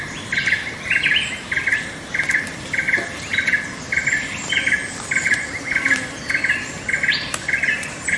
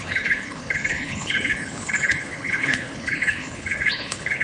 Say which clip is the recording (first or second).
first